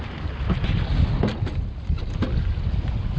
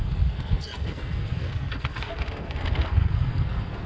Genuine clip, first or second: first